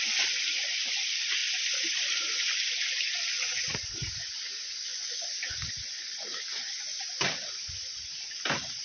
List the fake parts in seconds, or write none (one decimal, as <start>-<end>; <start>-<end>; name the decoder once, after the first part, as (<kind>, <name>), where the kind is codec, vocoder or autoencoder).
none